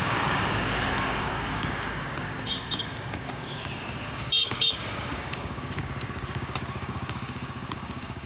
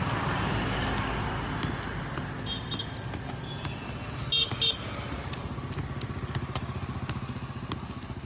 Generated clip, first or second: first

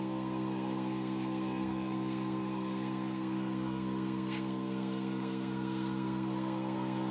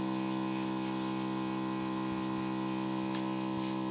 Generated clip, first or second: first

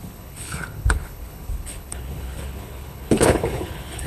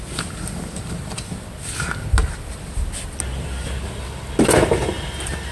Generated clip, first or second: first